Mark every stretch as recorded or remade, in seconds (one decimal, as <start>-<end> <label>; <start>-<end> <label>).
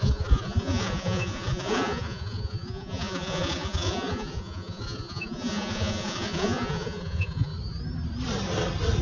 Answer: 0.0-7.5 remade; 7.5-9.0 recorded